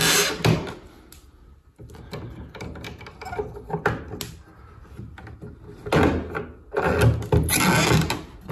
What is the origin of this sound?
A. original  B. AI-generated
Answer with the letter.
A